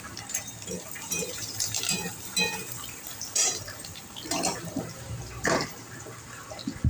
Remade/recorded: remade